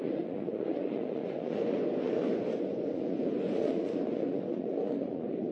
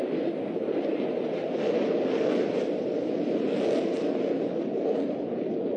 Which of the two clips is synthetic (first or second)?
first